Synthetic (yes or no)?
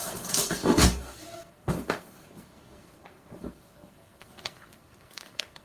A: yes